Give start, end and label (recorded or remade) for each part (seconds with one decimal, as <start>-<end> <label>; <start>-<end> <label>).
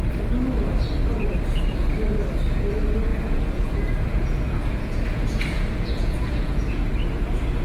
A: 0.0-3.1 recorded; 3.1-6.8 remade; 6.8-7.6 recorded